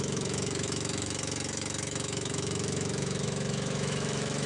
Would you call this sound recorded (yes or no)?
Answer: no